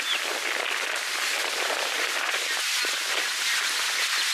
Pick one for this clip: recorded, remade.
recorded